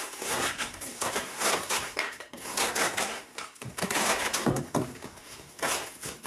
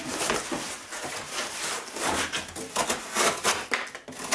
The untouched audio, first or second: second